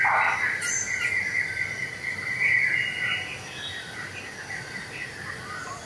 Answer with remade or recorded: recorded